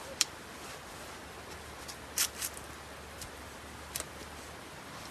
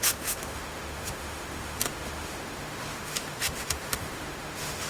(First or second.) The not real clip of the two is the second